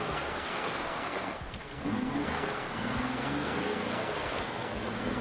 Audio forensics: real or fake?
fake